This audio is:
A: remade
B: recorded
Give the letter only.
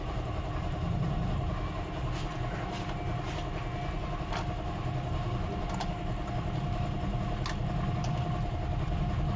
B